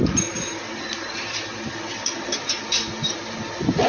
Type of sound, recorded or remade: recorded